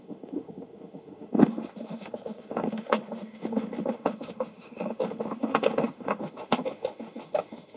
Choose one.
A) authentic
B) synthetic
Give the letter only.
B